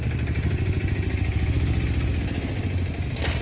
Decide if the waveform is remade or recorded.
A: recorded